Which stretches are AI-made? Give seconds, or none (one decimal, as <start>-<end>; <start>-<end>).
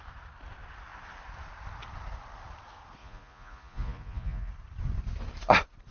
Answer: 3.0-4.5